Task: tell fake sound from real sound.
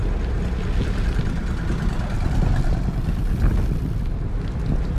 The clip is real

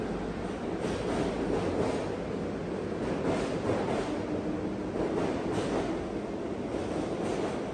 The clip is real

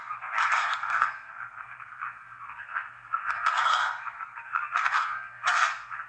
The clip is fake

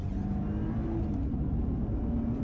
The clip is real